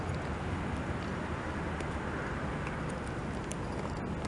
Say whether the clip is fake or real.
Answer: real